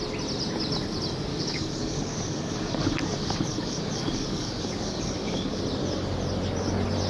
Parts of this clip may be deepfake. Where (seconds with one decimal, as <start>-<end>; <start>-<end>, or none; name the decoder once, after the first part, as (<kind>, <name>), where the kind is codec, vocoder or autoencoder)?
1.3-5.6 (codec, DAC)